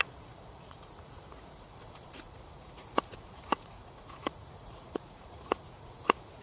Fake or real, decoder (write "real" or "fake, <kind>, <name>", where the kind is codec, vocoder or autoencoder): fake, vocoder, Vocos